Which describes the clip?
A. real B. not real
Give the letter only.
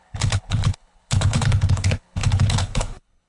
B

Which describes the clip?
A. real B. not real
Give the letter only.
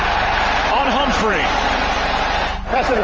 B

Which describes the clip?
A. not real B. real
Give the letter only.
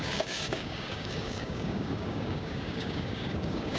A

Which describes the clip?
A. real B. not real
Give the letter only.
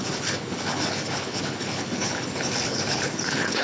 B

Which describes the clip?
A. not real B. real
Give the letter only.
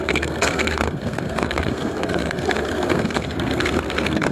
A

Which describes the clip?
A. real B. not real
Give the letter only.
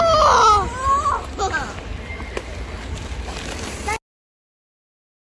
A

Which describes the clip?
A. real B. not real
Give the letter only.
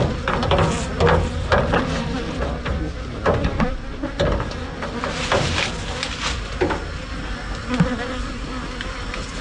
A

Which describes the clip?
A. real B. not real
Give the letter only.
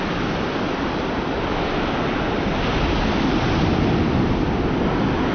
A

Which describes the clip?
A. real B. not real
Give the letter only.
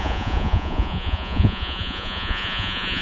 B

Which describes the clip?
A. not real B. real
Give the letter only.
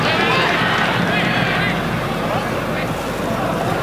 B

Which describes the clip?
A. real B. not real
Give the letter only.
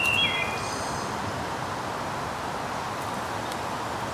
A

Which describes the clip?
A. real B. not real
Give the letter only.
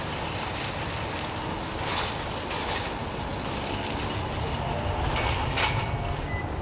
A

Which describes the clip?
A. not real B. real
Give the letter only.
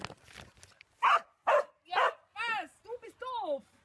B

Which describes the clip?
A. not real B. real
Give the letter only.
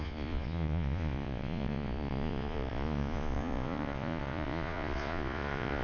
A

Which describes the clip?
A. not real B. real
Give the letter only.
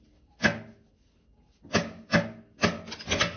B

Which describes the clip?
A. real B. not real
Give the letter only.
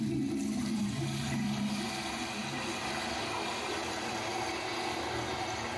A